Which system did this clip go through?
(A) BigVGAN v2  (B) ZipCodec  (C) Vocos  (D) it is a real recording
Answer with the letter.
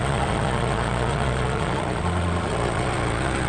C